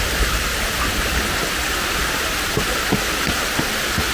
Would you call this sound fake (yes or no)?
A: no